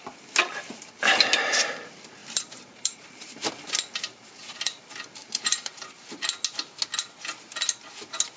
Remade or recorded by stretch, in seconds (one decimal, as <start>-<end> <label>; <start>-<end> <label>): 0.0-2.2 recorded; 2.2-3.5 remade; 3.5-5.2 recorded; 5.2-6.0 remade; 6.0-8.4 recorded